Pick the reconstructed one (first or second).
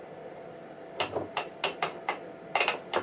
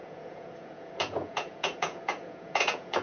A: second